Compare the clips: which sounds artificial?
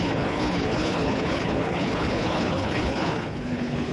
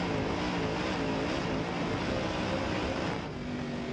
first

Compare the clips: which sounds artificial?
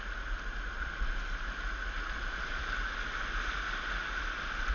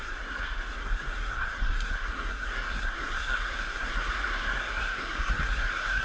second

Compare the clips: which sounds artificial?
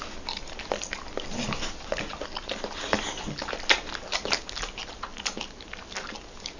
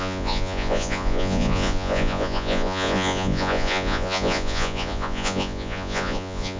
second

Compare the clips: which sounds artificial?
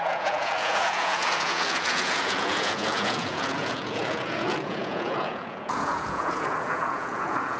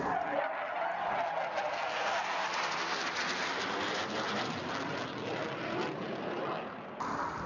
first